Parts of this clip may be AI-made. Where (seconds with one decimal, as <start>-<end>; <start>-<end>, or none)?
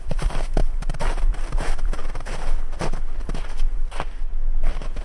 0.0-2.0; 3.2-3.8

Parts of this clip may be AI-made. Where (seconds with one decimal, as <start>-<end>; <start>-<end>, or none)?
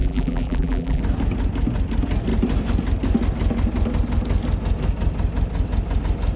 0.0-1.0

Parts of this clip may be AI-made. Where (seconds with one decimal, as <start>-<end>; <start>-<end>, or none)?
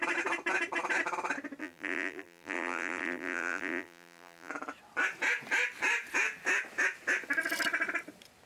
1.6-4.5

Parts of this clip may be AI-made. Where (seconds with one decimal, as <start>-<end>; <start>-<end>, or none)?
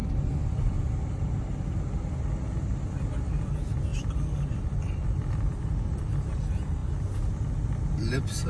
3.9-6.3